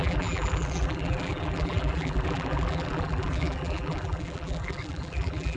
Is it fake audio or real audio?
fake